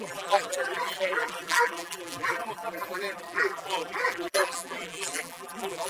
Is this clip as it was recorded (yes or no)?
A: no